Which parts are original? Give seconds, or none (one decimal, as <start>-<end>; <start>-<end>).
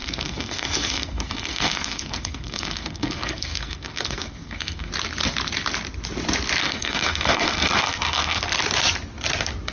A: 4.9-6.6; 8.4-9.7